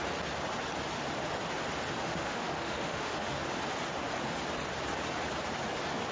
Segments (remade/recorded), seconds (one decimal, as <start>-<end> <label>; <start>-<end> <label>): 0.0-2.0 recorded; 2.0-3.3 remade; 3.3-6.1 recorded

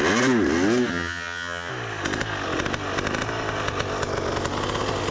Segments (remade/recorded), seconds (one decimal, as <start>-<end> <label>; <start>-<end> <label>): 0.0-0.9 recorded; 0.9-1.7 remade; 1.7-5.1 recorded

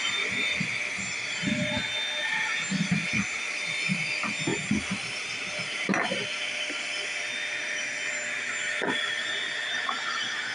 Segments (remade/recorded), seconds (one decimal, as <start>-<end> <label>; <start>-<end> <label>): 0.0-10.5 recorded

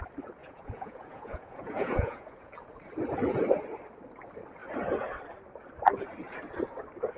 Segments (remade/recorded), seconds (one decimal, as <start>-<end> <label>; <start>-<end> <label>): 0.0-0.4 recorded; 0.4-2.5 remade; 2.5-7.2 recorded

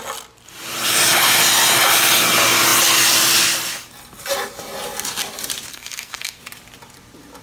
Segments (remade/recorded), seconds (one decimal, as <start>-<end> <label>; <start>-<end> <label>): 0.0-5.7 recorded; 5.7-6.4 remade; 6.4-7.4 recorded

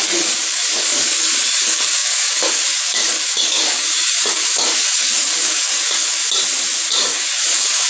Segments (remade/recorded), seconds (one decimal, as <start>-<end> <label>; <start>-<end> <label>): 0.0-6.2 remade; 6.2-6.9 recorded; 6.9-7.9 remade

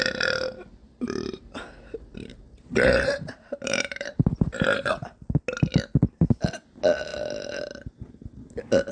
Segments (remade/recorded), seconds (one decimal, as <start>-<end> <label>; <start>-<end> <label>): 0.0-0.8 recorded; 0.8-4.9 remade; 4.9-8.9 recorded